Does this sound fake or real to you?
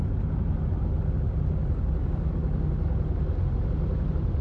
real